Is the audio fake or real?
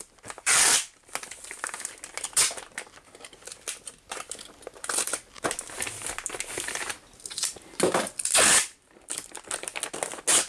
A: real